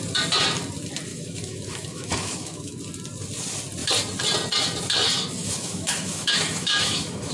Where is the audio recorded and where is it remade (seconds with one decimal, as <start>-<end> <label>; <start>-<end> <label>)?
0.0-1.1 recorded; 1.1-2.8 remade; 2.8-5.4 recorded; 5.4-7.3 remade